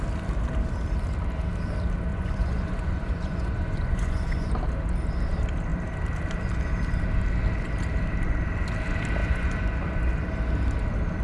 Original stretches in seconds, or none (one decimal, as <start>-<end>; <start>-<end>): 0.0-2.1; 4.5-9.2; 10.0-11.2